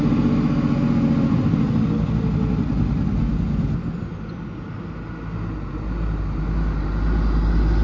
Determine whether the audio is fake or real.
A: real